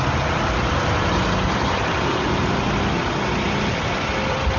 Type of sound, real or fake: real